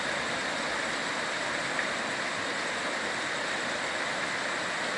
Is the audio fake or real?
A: real